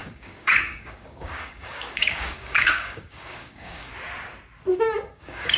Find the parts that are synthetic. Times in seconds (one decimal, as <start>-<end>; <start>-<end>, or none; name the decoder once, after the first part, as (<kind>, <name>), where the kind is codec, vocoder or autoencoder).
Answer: 0.0-3.9 (codec, DAC); 5.1-5.6